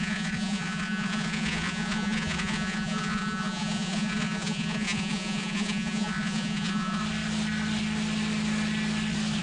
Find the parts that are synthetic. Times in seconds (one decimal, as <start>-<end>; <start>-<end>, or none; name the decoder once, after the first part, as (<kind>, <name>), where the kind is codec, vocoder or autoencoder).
0.0-7.0 (vocoder, Vocos)